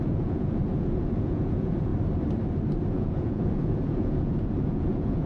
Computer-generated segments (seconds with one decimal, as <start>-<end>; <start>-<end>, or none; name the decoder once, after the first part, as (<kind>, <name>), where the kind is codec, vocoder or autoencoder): 0.0-1.9 (vocoder, Vocos); 2.9-5.3